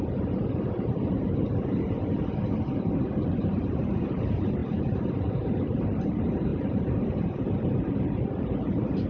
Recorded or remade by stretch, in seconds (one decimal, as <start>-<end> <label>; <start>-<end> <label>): 0.0-9.1 remade